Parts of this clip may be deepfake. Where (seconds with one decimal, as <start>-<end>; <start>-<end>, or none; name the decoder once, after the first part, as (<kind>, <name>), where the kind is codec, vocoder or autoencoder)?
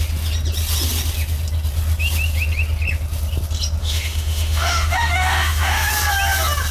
3.8-5.9 (autoencoder, DAC-VAE)